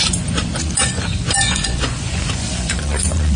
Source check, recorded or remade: remade